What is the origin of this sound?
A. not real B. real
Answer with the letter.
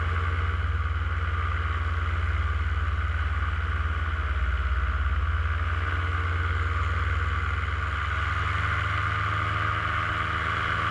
B